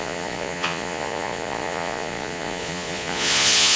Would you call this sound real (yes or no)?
no